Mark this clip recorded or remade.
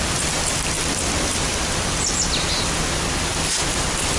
recorded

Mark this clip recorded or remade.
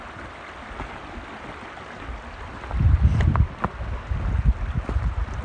recorded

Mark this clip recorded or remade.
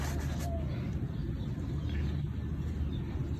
recorded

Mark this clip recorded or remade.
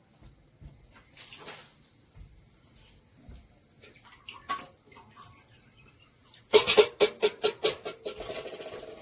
recorded